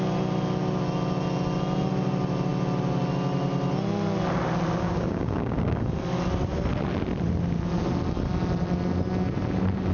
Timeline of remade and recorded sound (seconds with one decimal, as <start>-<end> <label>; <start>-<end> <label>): 0.0-4.8 recorded; 4.8-5.8 remade; 5.8-9.9 recorded